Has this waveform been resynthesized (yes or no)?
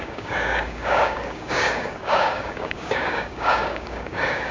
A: yes